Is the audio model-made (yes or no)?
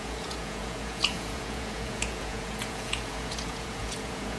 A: yes